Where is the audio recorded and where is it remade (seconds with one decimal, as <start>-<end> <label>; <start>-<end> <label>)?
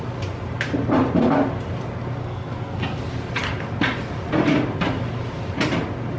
0.0-2.2 recorded; 2.2-3.0 remade; 3.0-6.2 recorded